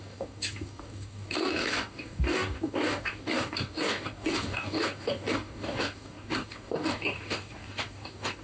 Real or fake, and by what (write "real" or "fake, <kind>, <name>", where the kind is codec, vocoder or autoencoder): fake, codec, DAC